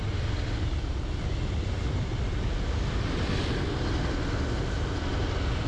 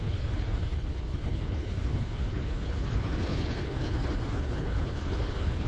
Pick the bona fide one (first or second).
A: first